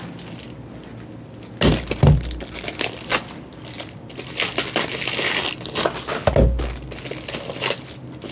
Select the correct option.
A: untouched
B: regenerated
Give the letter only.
A